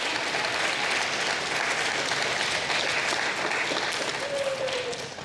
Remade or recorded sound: recorded